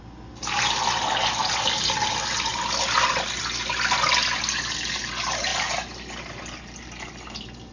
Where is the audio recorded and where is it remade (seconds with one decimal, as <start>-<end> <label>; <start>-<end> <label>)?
0.0-7.7 recorded